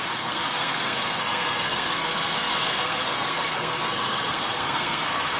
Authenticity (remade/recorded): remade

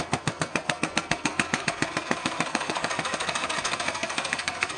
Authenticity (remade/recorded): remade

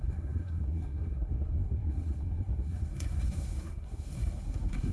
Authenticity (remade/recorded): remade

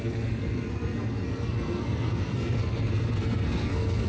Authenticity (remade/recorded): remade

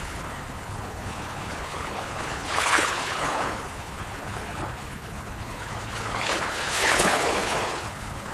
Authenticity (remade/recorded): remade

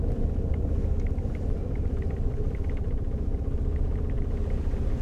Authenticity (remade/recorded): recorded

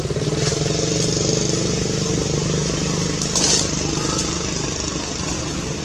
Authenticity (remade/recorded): recorded